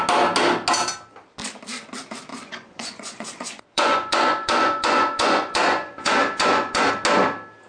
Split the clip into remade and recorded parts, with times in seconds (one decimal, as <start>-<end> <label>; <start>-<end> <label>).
0.0-2.3 recorded; 2.3-6.9 remade; 6.9-7.7 recorded